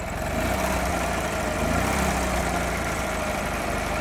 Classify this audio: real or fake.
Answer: real